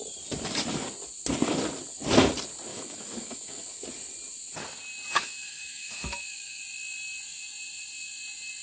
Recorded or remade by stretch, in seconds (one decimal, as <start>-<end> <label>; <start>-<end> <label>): 0.0-2.7 recorded; 2.7-3.6 remade; 3.6-5.1 recorded; 5.1-6.6 remade; 6.6-8.6 recorded